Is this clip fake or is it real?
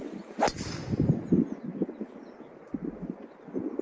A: real